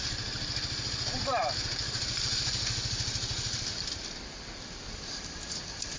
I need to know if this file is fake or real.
real